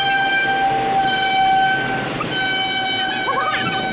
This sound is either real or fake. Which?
real